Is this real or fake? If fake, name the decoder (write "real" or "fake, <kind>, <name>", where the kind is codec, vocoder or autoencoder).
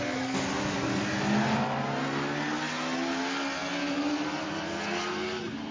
real